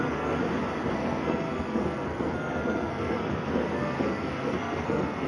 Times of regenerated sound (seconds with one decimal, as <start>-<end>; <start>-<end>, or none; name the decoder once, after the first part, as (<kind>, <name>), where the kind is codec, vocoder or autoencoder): 0.0-0.4 (codec, SNAC); 0.9-5.3